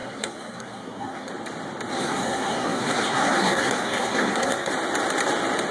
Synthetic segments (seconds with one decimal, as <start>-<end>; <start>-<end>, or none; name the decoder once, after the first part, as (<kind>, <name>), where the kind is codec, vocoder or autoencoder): 0.0-1.3 (codec, SNAC); 1.9-4.7